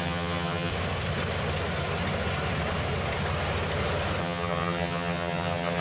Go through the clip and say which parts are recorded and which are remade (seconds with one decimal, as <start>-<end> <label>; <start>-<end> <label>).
0.0-0.7 remade; 0.7-4.2 recorded; 4.2-5.8 remade